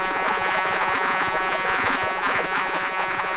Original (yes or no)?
no